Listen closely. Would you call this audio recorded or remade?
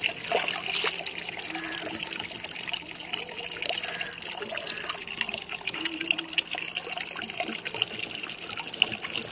recorded